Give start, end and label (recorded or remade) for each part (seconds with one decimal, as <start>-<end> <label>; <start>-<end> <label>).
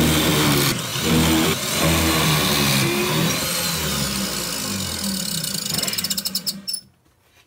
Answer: 0.0-7.5 recorded